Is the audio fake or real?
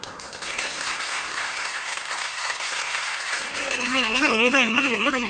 fake